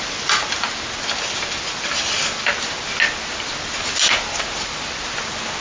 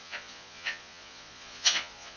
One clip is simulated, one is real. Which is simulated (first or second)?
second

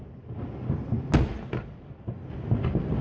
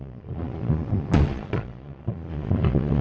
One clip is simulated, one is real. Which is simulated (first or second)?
second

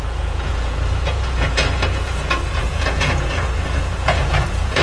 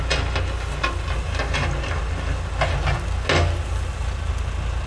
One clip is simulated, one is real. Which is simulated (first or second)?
first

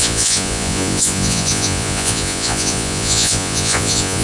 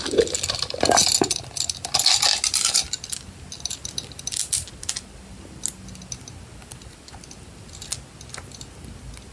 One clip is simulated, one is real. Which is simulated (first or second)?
first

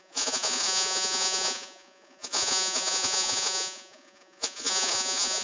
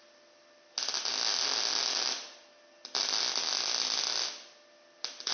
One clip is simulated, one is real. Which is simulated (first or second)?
first